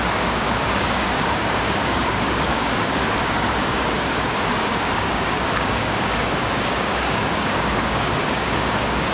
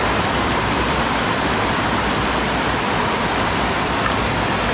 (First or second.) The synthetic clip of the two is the first